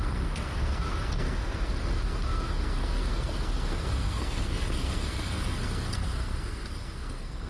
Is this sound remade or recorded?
remade